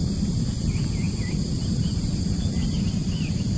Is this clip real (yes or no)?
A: yes